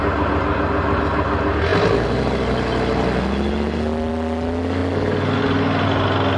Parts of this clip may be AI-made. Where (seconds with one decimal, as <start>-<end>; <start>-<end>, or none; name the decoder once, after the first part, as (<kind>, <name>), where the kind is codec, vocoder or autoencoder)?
none